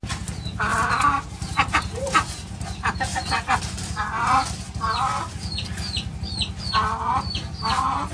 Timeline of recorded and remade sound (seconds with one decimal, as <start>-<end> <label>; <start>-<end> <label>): 0.0-0.7 recorded; 0.7-2.5 remade; 2.5-8.1 recorded